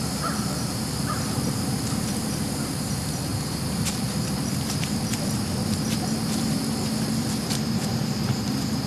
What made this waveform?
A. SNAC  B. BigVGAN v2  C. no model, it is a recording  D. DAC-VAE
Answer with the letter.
B